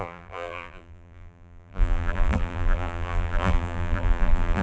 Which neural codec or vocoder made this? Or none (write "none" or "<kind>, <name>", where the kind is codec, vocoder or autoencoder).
vocoder, BigVGAN v2